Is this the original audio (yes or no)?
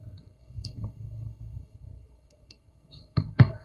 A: no